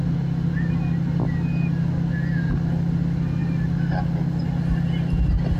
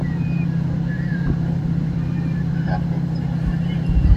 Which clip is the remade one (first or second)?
second